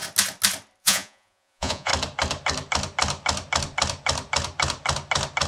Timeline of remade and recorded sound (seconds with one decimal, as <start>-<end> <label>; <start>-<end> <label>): 0.0-0.8 recorded; 0.8-1.9 remade; 1.9-5.5 recorded